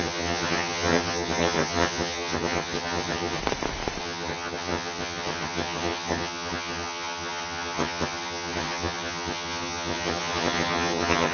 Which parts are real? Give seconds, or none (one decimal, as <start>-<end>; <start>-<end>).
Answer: 3.4-4.0